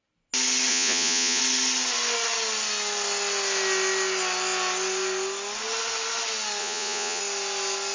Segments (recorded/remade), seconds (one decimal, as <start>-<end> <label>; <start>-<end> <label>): 0.0-0.7 recorded; 0.7-1.4 remade; 1.4-6.6 recorded; 6.6-7.2 remade; 7.2-7.9 recorded